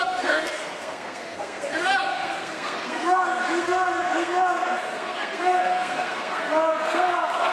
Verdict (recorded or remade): remade